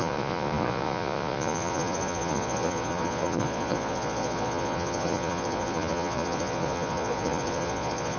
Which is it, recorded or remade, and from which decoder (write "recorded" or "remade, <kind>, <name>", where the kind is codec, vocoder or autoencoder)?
remade, vocoder, Vocos